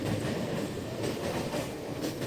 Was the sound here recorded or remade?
remade